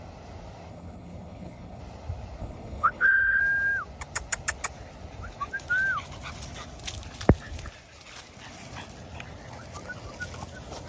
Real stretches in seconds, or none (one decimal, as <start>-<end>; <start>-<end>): 0.0-0.7; 1.8-2.4; 3.4-10.9